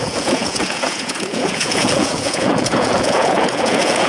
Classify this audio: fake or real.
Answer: fake